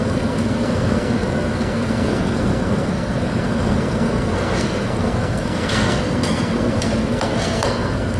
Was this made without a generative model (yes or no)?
no